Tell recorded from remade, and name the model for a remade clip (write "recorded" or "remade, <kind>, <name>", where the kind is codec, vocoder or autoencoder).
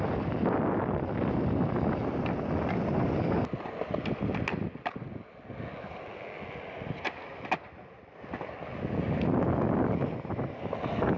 recorded